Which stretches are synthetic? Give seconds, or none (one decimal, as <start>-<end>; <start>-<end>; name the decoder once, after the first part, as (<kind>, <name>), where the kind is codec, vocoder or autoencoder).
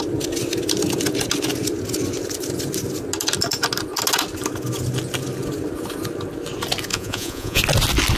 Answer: 6.9-7.6 (vocoder, Vocos)